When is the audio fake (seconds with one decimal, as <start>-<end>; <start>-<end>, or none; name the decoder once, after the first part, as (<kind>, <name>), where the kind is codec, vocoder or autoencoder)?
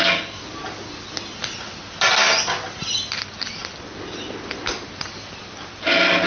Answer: none